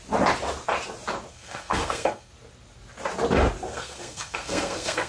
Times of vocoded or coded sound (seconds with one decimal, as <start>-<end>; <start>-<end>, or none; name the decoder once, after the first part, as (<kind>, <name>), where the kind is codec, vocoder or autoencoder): 1.3-2.3 (codec, SNAC); 3.7-5.1

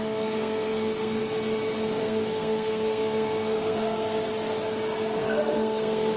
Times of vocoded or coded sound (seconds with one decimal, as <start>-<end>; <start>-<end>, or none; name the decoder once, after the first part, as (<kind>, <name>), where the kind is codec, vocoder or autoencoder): 0.0-1.2 (codec, SNAC); 2.0-4.3; 5.2-6.2

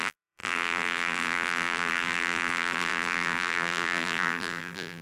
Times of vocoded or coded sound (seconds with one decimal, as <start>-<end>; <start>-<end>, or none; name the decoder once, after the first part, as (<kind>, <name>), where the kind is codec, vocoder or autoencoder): 0.0-5.0 (vocoder, BigVGAN v2)

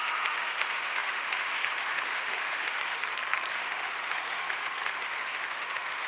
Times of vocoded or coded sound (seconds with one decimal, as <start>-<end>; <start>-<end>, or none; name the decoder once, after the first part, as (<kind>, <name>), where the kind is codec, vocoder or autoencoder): 0.0-3.0 (autoencoder, DAC-VAE); 3.5-6.1

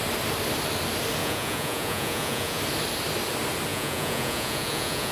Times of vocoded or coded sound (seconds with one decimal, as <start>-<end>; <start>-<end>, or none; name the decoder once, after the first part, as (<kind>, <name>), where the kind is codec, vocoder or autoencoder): 1.2-2.6 (vocoder, Vocos); 3.7-5.1

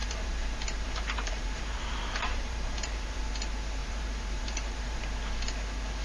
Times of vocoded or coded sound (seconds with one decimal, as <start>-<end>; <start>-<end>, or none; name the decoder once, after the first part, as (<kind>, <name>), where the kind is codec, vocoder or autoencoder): 0.0-3.2 (vocoder, BigVGAN v2); 3.8-5.0

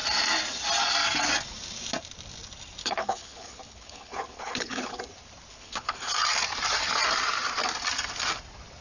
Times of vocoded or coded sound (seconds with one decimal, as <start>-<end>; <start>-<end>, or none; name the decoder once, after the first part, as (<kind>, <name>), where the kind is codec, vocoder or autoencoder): 2.8-5.0 (codec, HILCodec); 5.5-6.1